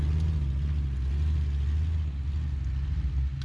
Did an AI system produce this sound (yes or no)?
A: no